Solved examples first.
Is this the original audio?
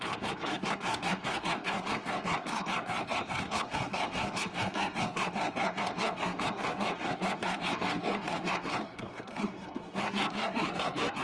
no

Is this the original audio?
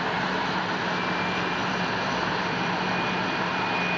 yes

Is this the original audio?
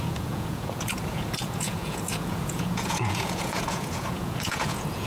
no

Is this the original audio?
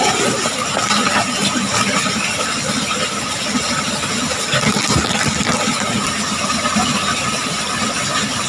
yes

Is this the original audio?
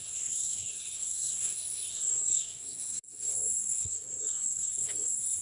no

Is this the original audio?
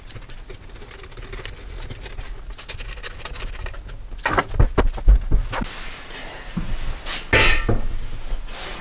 yes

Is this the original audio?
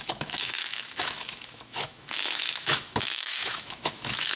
no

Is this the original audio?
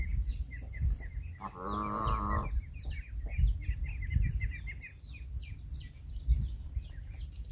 yes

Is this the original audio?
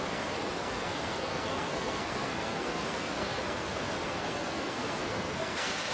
no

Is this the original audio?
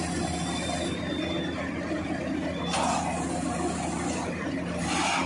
yes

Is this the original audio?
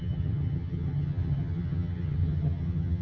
no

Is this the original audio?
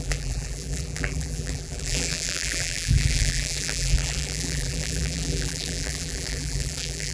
no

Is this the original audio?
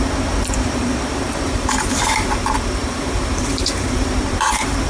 no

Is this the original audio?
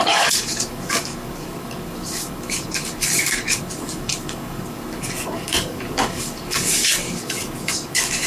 no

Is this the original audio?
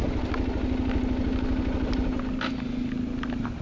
yes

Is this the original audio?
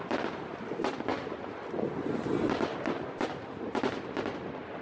yes